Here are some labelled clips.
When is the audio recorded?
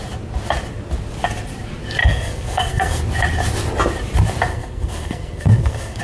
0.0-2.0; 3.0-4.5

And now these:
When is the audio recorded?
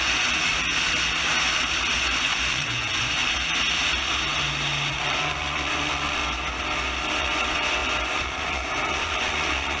0.5-2.0; 3.2-4.9; 6.2-7.2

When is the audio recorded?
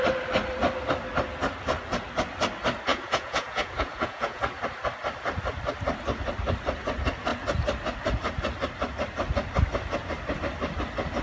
0.0-2.9; 4.4-11.2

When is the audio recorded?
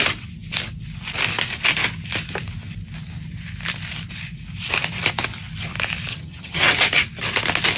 0.0-6.1; 6.7-7.8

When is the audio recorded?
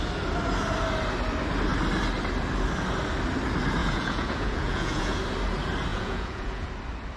0.0-3.8; 5.2-5.9; 6.7-7.2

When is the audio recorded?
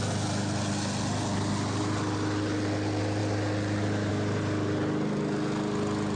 0.0-6.2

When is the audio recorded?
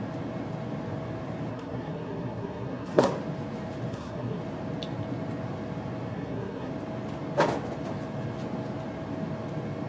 0.0-1.5; 3.1-3.9; 4.4-6.1; 6.7-9.9